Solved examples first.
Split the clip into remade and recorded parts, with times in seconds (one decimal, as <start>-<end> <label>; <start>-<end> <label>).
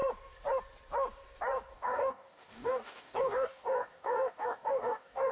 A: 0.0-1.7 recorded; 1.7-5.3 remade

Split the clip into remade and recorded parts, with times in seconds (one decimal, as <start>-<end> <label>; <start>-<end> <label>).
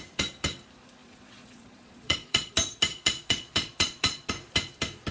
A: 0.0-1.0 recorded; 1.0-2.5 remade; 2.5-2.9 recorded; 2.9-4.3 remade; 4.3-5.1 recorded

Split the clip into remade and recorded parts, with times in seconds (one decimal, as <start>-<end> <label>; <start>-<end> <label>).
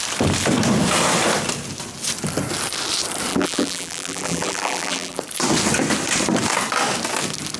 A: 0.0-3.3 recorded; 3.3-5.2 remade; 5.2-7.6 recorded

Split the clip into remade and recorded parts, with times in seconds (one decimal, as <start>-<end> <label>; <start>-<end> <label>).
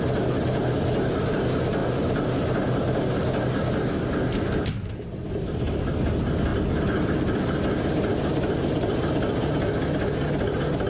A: 0.0-6.5 recorded; 6.5-7.6 remade; 7.6-10.9 recorded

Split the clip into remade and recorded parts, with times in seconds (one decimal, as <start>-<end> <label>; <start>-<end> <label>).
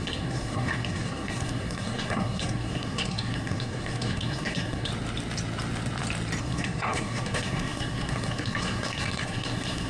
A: 0.0-4.9 remade; 4.9-6.4 recorded; 6.4-9.9 remade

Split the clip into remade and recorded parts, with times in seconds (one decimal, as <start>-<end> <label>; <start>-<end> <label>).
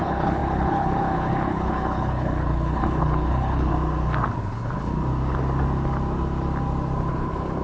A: 0.0-3.7 remade; 3.7-4.4 recorded; 4.4-4.9 remade; 4.9-7.1 recorded; 7.1-7.6 remade